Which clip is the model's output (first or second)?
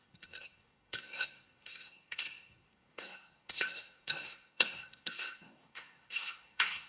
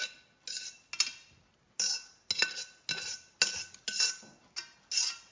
first